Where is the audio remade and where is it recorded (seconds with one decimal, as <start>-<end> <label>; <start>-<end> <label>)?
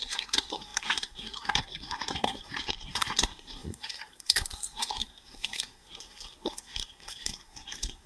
0.0-8.1 remade